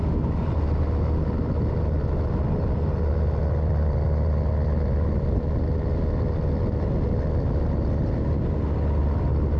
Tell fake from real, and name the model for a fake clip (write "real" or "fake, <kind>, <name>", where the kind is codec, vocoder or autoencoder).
real